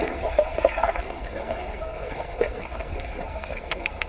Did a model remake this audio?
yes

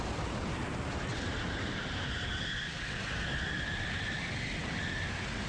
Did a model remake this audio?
no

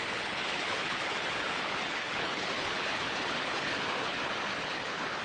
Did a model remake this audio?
yes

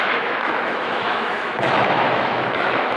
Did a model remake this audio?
yes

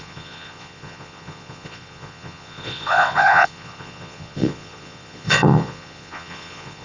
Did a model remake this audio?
yes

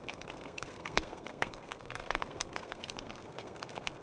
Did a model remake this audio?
yes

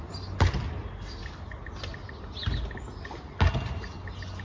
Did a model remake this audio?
no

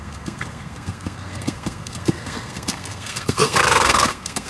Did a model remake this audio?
yes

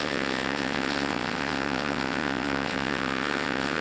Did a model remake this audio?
yes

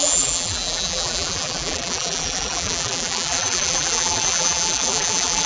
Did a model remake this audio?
yes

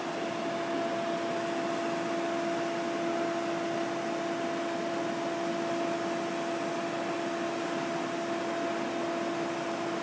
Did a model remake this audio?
no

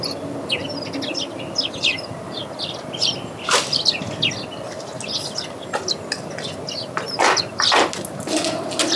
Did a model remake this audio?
no